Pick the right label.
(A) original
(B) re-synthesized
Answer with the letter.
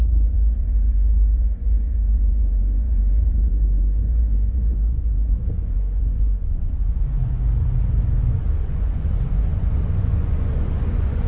B